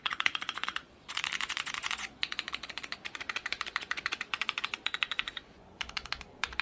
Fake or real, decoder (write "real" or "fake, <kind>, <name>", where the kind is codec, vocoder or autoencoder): fake, vocoder, Vocos